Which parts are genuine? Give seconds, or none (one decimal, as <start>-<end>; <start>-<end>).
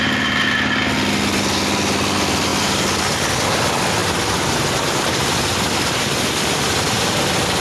0.0-4.0; 6.7-7.6